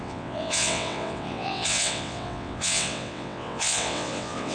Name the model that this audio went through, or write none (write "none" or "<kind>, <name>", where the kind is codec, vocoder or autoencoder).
vocoder, WaveNeXt